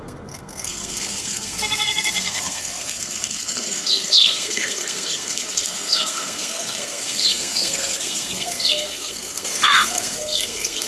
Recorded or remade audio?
remade